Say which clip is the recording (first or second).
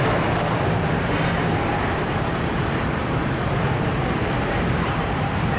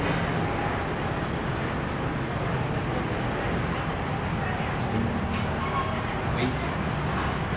second